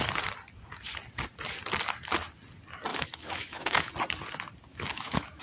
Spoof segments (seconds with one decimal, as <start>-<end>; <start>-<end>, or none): 2.9-3.9; 4.7-5.4